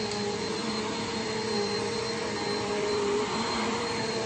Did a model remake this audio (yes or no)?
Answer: yes